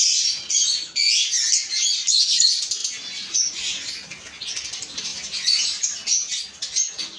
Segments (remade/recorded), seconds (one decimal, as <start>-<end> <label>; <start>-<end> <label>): 0.0-7.2 recorded